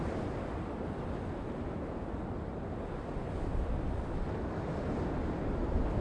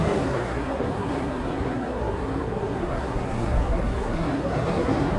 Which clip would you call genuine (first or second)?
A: first